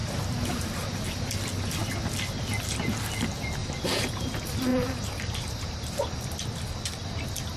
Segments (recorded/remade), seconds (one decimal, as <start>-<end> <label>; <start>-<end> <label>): 0.0-1.0 remade; 1.0-3.6 recorded; 3.6-4.2 remade; 4.2-4.7 recorded; 4.7-6.2 remade; 6.2-7.6 recorded

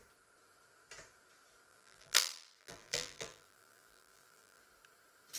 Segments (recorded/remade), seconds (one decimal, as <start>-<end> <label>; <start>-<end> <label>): 0.0-1.7 recorded; 1.7-4.6 remade; 4.6-5.4 recorded

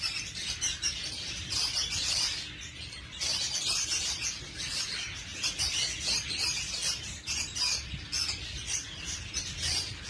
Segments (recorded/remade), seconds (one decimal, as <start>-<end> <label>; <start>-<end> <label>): 0.0-10.1 remade

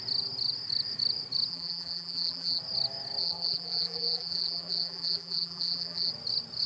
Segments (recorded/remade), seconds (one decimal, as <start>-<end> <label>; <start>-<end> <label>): 0.0-1.5 recorded; 1.5-2.6 remade; 2.6-3.2 recorded; 3.2-6.1 remade; 6.1-6.7 recorded

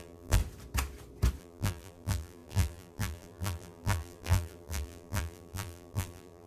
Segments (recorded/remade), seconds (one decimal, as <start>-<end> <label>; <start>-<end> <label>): 0.0-0.4 remade; 0.4-1.4 recorded; 1.4-6.5 remade

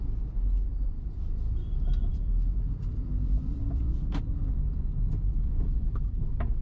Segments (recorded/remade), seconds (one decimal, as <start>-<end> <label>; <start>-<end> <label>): 0.0-2.1 recorded; 2.1-6.1 remade; 6.1-6.6 recorded